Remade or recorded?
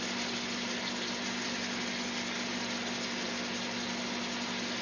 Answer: recorded